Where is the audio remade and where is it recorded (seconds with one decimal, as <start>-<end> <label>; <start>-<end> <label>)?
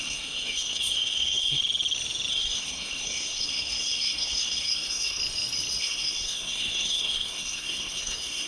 0.0-1.6 remade; 1.6-2.3 recorded; 2.3-5.2 remade; 5.2-5.8 recorded; 5.8-8.5 remade